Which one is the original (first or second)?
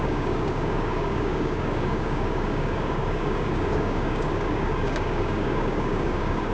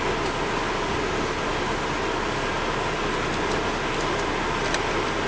second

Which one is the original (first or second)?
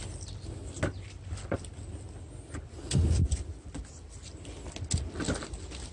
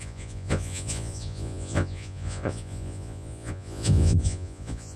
first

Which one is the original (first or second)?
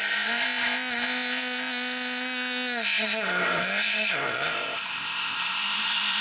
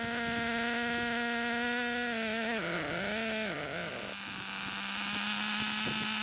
second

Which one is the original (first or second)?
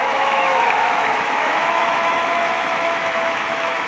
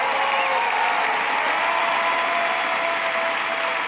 second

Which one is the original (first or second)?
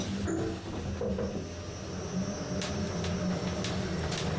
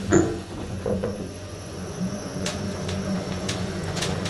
first